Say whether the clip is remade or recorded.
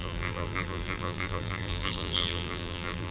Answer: remade